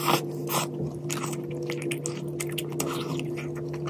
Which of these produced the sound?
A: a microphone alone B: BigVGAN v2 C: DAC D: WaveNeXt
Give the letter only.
A